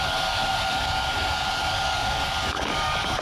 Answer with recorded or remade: remade